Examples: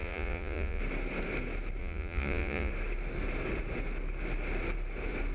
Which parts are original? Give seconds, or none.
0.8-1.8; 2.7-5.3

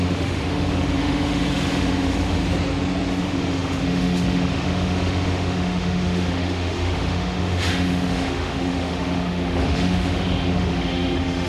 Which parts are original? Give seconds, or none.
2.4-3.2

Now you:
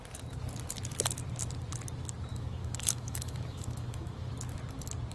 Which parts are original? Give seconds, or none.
0.0-2.3; 4.3-5.1

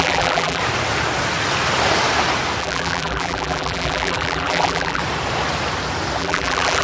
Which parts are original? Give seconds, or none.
0.6-2.6; 5.0-6.2

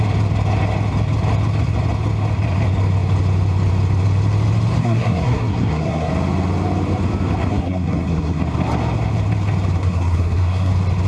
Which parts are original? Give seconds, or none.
0.0-4.8; 6.1-7.5; 8.4-9.8; 10.7-11.1

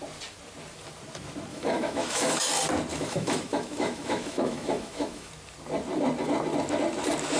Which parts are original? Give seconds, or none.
0.0-1.5; 2.5-2.9; 5.3-7.4

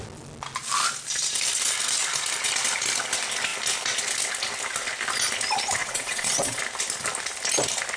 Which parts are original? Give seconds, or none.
0.0-5.8; 6.6-8.0

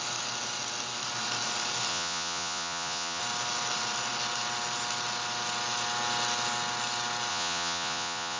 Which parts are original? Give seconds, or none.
0.0-1.9; 3.2-7.3